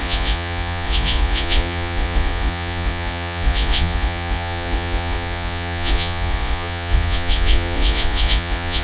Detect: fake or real fake